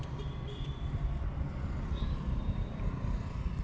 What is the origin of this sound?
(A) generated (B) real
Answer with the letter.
B